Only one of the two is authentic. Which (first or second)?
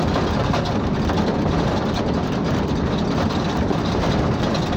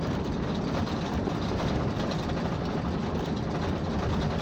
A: first